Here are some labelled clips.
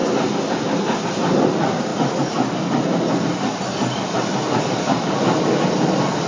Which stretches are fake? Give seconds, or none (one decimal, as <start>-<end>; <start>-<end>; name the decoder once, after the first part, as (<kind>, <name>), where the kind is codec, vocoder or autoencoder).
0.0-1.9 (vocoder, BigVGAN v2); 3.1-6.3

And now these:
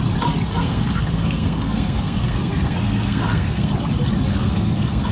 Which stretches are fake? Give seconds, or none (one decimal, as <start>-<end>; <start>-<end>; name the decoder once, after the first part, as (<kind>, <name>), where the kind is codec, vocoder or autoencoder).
0.6-3.7 (codec, SNAC); 4.3-5.1

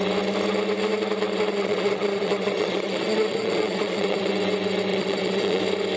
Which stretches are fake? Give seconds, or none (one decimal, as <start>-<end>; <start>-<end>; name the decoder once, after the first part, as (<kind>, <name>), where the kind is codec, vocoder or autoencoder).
1.5-4.3 (vocoder, Vocos); 4.9-5.6

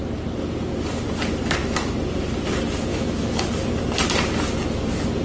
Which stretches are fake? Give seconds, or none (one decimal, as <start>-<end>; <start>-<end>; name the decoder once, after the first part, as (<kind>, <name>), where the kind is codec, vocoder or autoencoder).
2.9-3.5 (autoencoder, DAC-VAE)

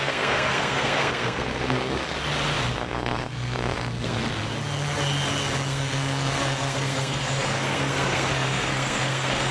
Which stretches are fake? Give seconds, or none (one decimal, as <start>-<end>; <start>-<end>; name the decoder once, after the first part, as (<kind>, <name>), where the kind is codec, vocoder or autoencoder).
0.0-2.1 (codec, SNAC); 2.7-4.2; 5.7-9.5

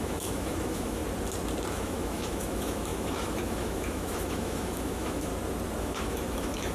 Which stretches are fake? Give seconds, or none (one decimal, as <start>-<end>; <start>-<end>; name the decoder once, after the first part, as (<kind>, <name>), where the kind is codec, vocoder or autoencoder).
0.0-1.0 (autoencoder, DAC-VAE); 1.7-5.3; 5.8-6.7

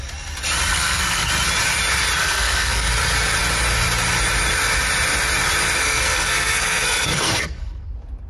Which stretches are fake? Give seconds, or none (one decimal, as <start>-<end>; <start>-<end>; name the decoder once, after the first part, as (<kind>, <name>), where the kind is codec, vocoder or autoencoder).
0.7-1.3 (codec, SNAC); 2.2-2.9; 5.8-7.9

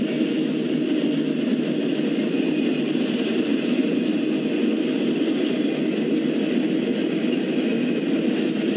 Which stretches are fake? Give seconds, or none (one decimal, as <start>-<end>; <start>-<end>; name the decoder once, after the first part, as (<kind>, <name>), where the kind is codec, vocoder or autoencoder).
none